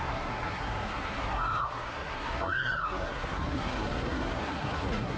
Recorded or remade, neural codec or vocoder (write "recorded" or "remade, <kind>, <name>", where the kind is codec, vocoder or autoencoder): remade, codec, SNAC